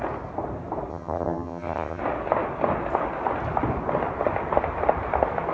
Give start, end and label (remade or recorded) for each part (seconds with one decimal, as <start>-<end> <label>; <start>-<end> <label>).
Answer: 0.0-0.9 recorded; 0.9-2.0 remade; 2.0-5.5 recorded